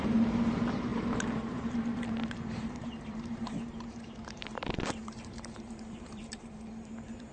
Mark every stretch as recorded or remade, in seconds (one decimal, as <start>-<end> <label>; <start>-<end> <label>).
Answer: 0.0-7.3 remade

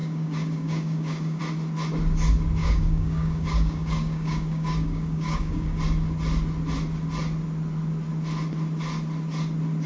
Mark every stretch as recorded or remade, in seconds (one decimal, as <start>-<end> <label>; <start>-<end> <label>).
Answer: 0.0-1.4 remade; 1.4-2.6 recorded; 2.6-5.8 remade; 5.8-9.9 recorded

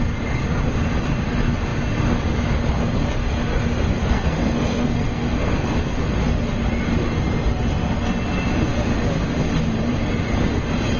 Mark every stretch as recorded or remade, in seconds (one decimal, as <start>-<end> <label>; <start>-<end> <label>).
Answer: 0.0-3.9 recorded; 3.9-6.2 remade; 6.2-11.0 recorded

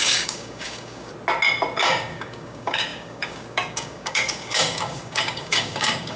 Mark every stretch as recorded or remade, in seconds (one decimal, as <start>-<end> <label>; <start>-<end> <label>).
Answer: 0.0-1.1 remade; 1.1-1.8 recorded; 1.8-6.2 remade

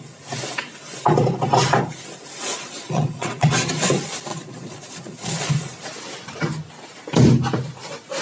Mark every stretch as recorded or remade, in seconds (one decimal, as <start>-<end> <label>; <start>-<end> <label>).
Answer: 0.0-2.4 recorded; 2.4-3.5 remade; 3.5-4.3 recorded; 4.3-5.5 remade; 5.5-8.2 recorded